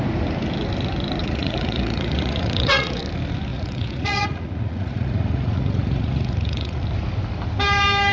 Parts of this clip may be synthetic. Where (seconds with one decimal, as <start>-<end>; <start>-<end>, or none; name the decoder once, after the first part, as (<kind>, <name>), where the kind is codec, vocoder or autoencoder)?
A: 1.2-3.0 (vocoder, Vocos); 3.5-6.8